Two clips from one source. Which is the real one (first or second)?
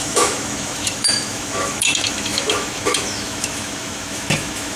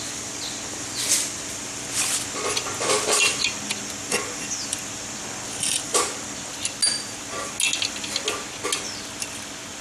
second